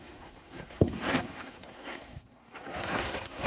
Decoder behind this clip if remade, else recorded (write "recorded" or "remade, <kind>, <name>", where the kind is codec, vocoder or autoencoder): remade, codec, SNAC